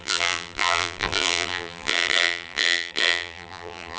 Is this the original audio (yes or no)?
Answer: no